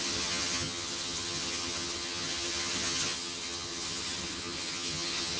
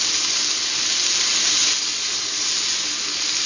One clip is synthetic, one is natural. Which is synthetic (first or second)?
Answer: first